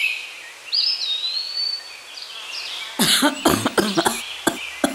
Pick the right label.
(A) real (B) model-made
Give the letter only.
A